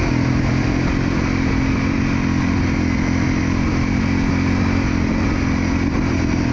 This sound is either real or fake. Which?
real